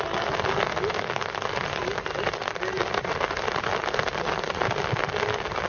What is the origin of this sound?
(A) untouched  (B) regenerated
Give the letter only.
A